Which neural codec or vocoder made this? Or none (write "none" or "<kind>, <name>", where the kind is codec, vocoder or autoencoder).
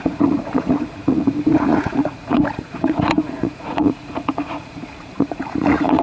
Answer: vocoder, Vocos